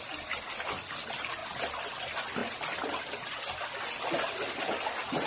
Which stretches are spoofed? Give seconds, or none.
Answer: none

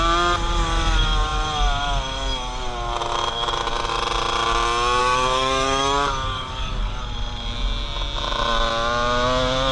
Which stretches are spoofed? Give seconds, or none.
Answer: 5.0-7.0

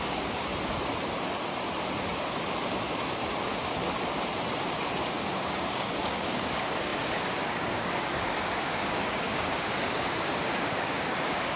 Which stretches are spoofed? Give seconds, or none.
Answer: 0.0-0.5; 5.0-11.6

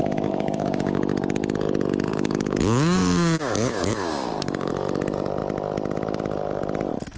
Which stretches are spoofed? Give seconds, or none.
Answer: 0.0-1.0; 2.1-4.7

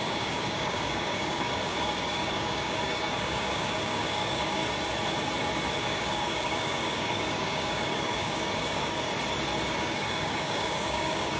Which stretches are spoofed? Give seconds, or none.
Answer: 0.0-4.6; 5.8-9.1; 9.7-11.4

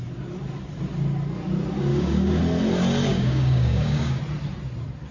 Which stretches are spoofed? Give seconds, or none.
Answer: 1.9-2.4; 3.1-4.2

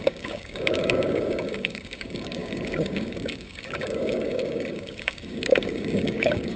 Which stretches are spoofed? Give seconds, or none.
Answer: 0.0-6.6